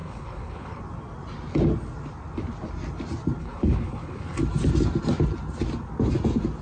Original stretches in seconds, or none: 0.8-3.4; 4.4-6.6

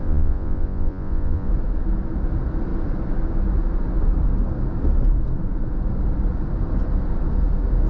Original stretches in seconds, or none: 1.5-7.9

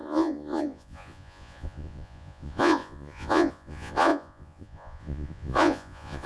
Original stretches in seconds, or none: none

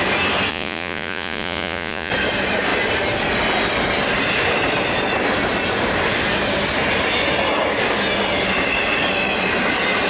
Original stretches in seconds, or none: 0.0-0.5; 2.1-10.1

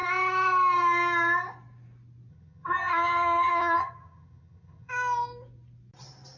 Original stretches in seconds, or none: 0.0-2.3; 4.9-6.4